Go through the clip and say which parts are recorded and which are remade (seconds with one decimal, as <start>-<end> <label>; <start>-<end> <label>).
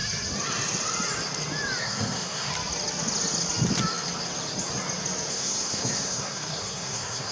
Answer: 0.0-1.8 recorded; 1.8-2.5 remade; 2.5-5.3 recorded; 5.3-7.3 remade